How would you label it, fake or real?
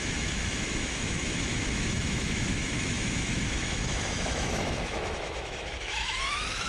fake